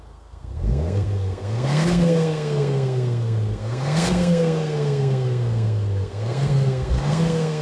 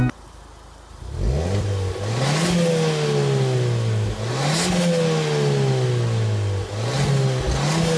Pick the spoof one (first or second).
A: first